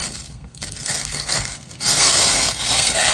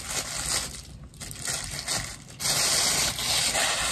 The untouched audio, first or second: second